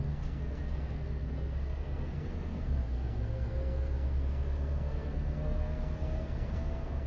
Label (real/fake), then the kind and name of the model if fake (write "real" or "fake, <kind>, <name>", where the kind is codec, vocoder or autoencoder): fake, codec, SNAC